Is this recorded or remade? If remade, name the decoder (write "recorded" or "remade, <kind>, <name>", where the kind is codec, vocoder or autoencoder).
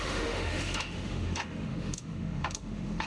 remade, autoencoder, DAC-VAE